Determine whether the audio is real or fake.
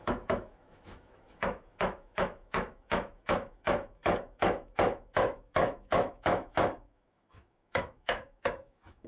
fake